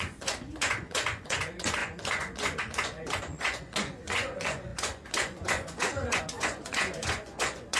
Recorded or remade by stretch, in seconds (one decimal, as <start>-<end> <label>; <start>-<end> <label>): 0.0-7.8 remade